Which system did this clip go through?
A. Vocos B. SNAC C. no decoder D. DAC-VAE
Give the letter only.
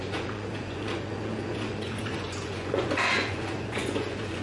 A